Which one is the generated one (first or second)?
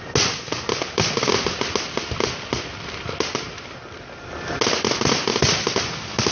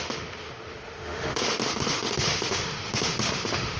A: second